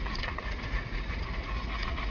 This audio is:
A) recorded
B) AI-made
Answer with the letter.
B